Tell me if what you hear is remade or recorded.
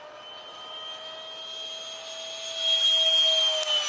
recorded